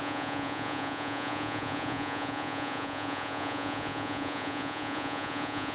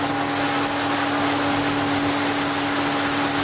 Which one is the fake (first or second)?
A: first